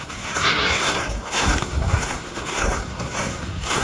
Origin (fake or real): fake